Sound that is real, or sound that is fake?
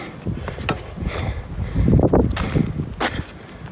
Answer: real